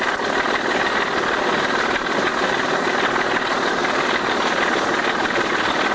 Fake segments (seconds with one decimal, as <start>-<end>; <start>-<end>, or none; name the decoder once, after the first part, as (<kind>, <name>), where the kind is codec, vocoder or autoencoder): none